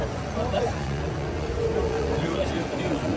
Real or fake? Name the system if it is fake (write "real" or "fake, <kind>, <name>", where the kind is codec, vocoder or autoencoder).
fake, vocoder, Vocos